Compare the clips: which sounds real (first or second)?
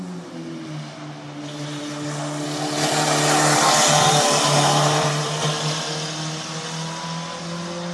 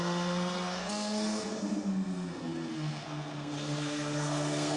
first